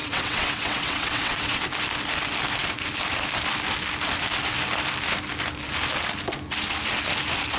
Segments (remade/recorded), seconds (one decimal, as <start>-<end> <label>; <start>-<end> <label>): 0.0-1.6 remade; 1.6-7.6 recorded